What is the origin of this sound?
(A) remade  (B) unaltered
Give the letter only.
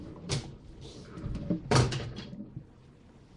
A